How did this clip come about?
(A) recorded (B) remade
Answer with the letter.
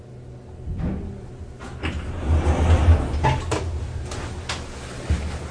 A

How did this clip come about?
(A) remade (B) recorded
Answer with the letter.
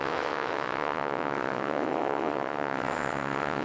A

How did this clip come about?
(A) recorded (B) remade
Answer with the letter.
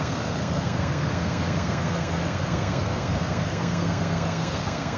B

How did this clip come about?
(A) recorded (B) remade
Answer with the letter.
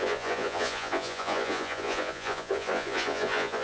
B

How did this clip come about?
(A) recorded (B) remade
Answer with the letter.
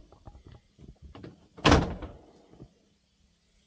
A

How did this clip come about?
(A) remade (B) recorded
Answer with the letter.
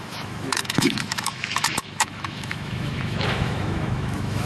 A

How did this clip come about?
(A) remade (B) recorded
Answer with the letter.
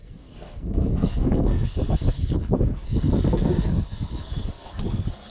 A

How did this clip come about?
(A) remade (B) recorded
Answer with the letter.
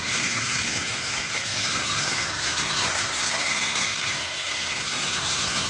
A